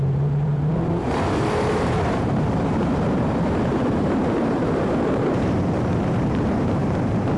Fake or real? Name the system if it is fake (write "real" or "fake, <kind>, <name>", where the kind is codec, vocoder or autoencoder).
fake, vocoder, BigVGAN v2